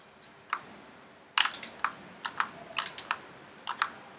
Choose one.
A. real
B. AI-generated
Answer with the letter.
A